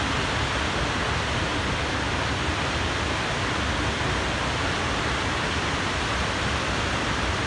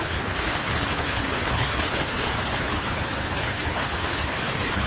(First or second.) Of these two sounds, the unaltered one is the first